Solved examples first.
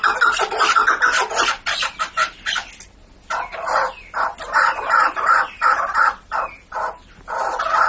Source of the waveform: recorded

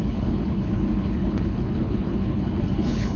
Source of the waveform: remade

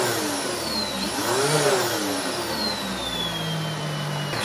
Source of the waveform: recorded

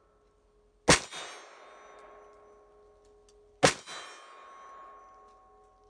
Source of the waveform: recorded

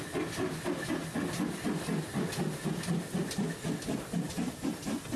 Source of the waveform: recorded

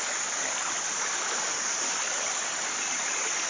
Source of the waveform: recorded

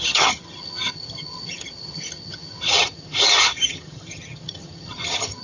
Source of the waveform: remade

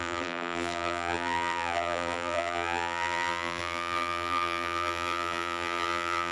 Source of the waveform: remade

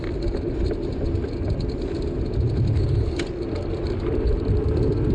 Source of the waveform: recorded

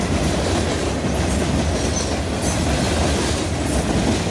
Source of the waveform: recorded